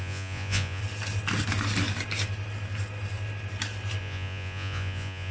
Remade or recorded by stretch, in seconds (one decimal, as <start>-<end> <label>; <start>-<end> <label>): 0.0-0.8 remade; 0.8-4.0 recorded; 4.0-5.3 remade

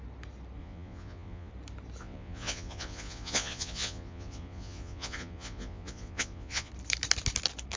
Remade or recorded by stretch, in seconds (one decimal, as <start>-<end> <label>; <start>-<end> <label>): 0.0-0.6 recorded; 0.6-1.5 remade; 1.5-2.0 recorded; 2.0-6.7 remade; 6.7-7.8 recorded

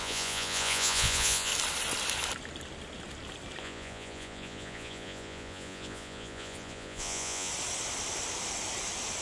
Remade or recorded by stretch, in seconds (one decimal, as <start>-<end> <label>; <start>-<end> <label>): 0.0-1.5 remade; 1.5-3.6 recorded; 3.6-7.5 remade; 7.5-9.2 recorded